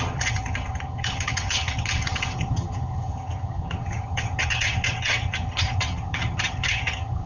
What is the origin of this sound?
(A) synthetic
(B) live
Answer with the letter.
A